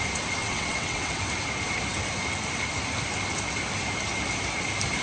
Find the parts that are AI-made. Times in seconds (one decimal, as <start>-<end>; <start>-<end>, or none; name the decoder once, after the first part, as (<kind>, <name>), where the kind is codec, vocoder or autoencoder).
0.4-1.3 (vocoder, WaveNeXt)